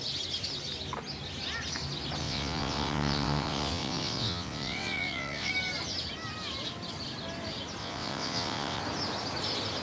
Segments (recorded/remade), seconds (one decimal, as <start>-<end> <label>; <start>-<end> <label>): 0.0-2.2 recorded; 2.2-5.5 remade; 5.5-7.8 recorded; 7.8-8.8 remade; 8.8-9.8 recorded